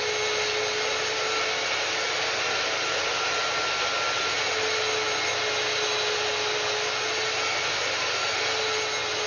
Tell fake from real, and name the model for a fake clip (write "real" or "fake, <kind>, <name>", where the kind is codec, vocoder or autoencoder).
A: real